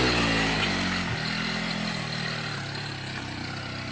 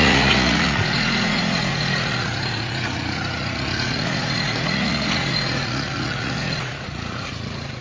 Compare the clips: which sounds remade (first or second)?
second